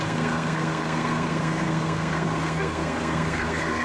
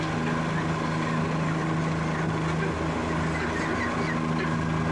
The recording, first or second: second